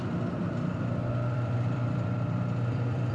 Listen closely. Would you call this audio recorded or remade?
remade